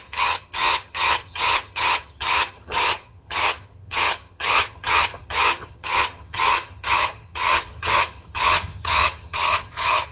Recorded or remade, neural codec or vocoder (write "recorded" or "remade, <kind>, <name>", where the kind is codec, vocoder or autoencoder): remade, vocoder, HiFi-GAN